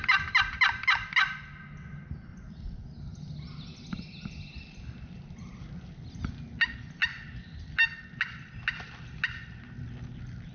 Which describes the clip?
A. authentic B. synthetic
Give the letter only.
A